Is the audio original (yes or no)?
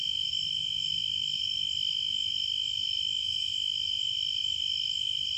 yes